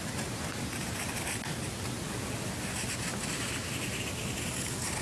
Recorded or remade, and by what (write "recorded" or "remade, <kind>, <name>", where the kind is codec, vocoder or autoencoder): recorded